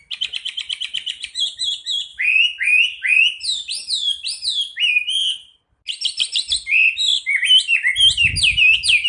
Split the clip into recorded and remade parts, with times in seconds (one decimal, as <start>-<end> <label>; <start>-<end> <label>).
0.0-2.1 recorded; 2.1-3.2 remade; 3.2-9.1 recorded